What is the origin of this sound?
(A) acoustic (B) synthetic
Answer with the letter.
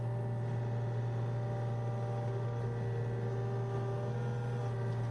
A